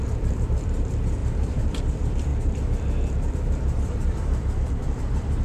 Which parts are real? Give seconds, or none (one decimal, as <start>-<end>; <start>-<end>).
2.3-3.3